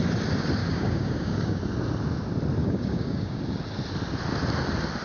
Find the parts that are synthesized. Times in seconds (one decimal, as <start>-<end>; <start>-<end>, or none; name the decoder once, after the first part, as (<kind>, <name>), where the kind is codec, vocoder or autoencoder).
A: 0.6-1.6 (codec, DAC); 2.6-3.4